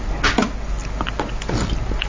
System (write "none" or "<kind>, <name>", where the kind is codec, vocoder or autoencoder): none